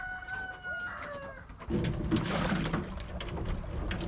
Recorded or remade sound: recorded